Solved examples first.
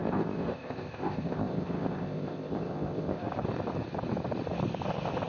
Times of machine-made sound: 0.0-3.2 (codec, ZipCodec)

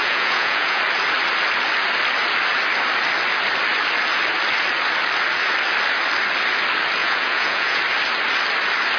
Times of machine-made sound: 0.0-0.8 (vocoder, Vocos); 7.0-7.8

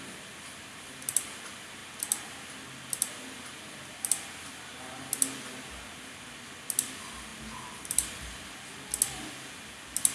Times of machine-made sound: none

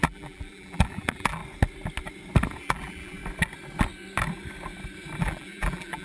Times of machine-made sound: 0.0-1.4 (vocoder, BigVGAN v2); 2.6-3.2; 5.2-6.0

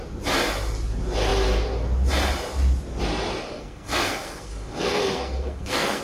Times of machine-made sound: 3.5-6.0 (codec, SNAC)

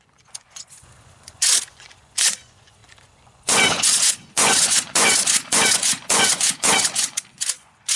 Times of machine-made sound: 0.0-8.0 (vocoder, Vocos)